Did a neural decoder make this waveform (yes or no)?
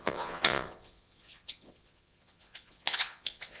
yes